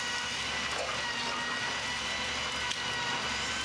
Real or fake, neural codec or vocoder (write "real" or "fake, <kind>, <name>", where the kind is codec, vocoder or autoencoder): real